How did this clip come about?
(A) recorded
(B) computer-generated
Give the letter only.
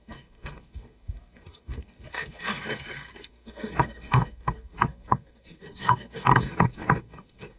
B